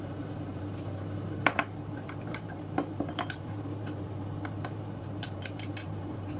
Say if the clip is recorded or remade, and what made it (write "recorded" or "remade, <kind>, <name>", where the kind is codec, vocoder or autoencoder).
remade, vocoder, BigVGAN v2